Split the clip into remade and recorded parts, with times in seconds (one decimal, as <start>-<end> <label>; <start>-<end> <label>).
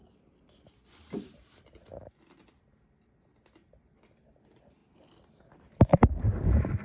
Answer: 0.0-6.8 recorded